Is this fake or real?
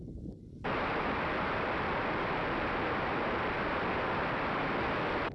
real